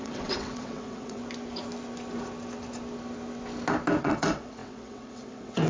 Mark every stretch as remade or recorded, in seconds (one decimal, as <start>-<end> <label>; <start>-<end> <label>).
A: 0.0-1.2 remade; 1.2-4.0 recorded; 4.0-5.7 remade